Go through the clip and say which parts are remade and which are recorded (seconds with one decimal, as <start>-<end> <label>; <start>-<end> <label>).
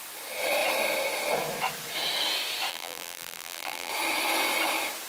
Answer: 0.0-2.7 recorded; 2.7-3.9 remade; 3.9-5.1 recorded